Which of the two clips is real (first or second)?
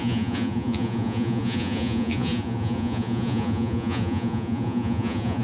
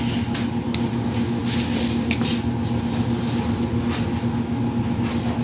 second